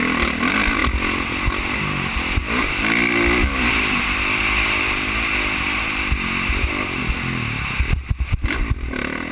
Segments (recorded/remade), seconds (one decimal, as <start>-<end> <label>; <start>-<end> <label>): 0.0-9.3 recorded